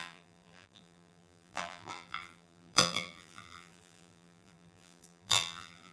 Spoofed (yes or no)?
yes